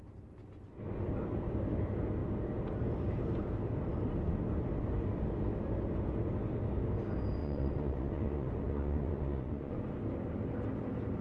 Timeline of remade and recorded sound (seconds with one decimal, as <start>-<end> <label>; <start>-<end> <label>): 0.0-7.4 recorded; 7.4-9.8 remade; 9.8-11.2 recorded